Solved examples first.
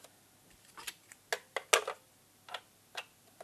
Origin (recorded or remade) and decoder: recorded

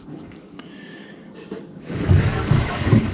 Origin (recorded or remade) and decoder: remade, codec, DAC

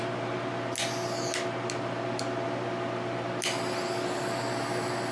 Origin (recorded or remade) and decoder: recorded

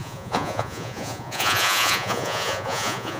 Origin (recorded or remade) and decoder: remade, vocoder, Vocos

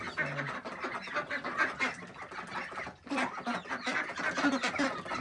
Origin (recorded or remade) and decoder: recorded